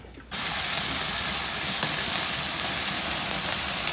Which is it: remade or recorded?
recorded